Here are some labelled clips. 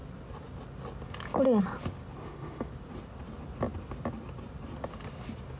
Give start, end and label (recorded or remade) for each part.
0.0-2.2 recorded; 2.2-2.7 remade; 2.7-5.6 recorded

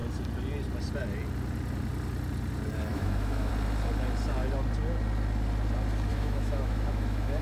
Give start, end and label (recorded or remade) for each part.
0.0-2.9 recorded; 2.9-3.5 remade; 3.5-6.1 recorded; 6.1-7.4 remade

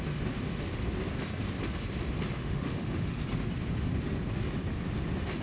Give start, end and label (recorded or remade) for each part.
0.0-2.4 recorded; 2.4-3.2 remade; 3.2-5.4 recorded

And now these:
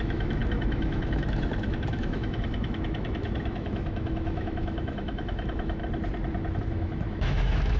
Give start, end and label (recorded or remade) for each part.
0.0-5.8 remade; 5.8-6.6 recorded; 6.6-7.8 remade